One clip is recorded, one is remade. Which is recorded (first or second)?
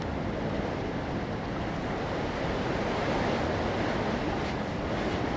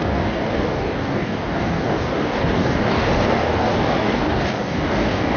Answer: first